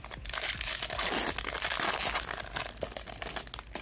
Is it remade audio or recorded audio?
recorded